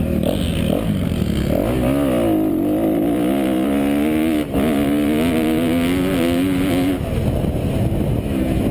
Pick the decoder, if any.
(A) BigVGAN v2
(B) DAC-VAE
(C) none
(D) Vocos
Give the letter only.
C